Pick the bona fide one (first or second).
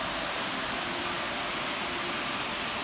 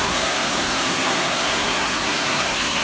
first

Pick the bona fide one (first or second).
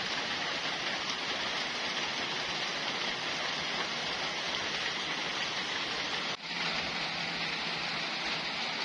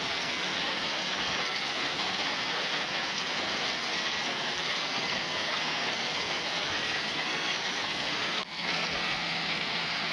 first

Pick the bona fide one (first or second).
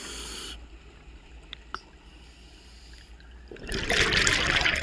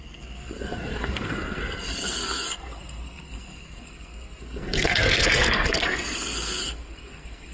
first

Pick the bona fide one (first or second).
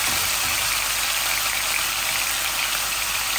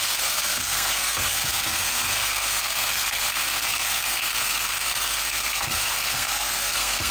first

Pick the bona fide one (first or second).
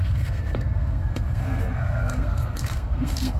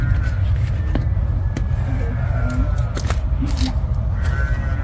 second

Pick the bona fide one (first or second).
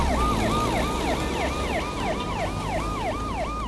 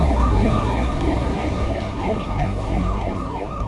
first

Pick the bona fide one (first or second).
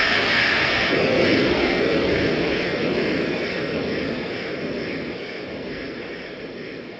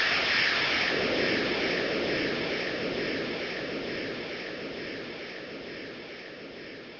second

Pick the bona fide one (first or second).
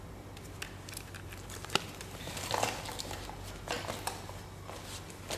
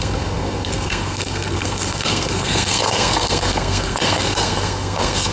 first